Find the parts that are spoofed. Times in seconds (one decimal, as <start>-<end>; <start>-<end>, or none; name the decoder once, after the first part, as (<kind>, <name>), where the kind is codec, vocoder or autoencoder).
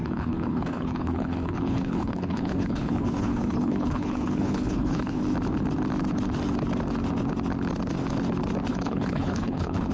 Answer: 0.0-5.2 (codec, HILCodec); 8.7-9.9